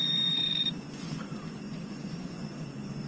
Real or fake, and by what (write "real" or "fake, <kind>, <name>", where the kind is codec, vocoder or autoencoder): fake, vocoder, Vocos